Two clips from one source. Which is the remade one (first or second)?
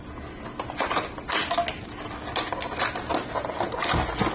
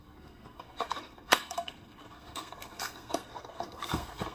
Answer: second